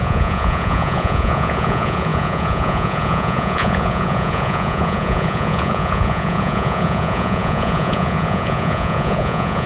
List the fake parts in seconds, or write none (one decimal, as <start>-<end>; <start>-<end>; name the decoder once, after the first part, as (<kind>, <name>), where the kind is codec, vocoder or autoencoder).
0.0-9.7 (vocoder, Vocos)